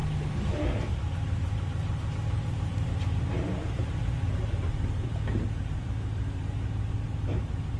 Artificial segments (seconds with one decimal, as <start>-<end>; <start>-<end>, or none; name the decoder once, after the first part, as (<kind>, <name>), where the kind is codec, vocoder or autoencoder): 0.0-7.8 (vocoder, BigVGAN v2)

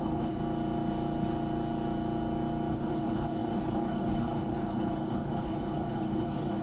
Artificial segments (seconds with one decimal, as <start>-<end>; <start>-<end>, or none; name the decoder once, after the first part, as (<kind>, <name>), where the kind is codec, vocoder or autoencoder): 0.0-0.4 (codec, HILCodec); 2.7-6.6

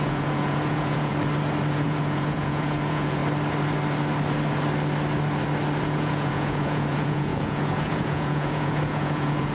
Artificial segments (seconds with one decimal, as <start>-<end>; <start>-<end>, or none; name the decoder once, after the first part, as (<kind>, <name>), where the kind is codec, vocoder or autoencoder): 0.0-1.1 (vocoder, Vocos); 1.7-3.2; 5.8-9.5